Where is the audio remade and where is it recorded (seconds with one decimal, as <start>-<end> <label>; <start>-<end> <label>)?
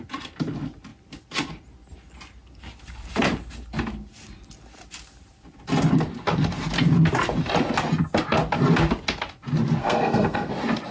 0.0-9.8 recorded; 9.8-10.5 remade; 10.5-10.9 recorded